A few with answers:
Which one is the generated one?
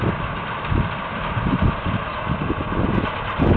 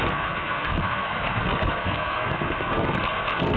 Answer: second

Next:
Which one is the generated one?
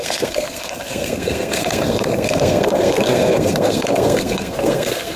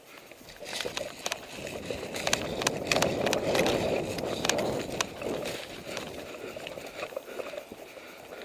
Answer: first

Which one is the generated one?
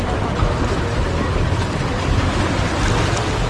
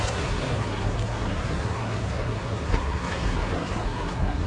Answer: second